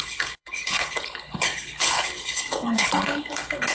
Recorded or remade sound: remade